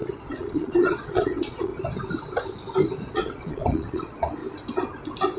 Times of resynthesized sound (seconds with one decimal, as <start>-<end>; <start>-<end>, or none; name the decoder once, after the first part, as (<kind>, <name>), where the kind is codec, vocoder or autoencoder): 0.0-1.7 (vocoder, Vocos); 3.0-4.4